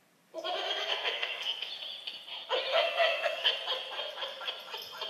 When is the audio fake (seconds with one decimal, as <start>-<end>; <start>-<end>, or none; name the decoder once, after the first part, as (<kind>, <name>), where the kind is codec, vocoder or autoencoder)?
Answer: 0.8-1.7 (codec, SNAC); 2.7-3.5